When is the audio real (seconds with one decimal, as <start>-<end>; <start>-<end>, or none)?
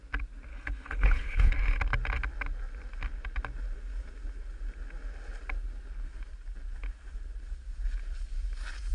0.0-0.5; 1.5-8.9